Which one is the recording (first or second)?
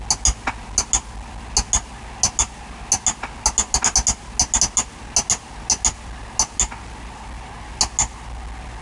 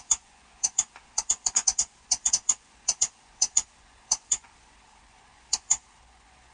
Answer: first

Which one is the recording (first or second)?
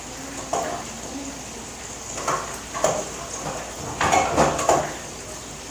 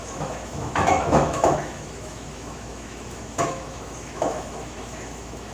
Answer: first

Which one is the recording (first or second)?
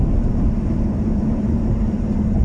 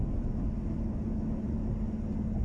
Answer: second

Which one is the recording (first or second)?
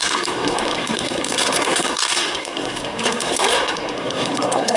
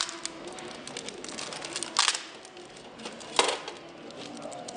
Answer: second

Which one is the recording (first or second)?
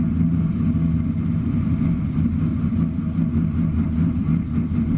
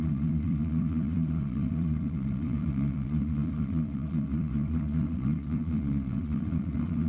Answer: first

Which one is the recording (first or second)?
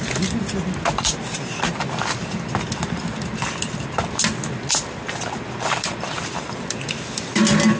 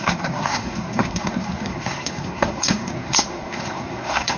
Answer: first